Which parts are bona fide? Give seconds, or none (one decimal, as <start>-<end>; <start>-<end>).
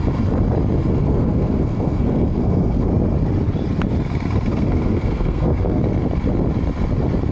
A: 0.0-0.9; 2.9-4.5; 5.8-7.3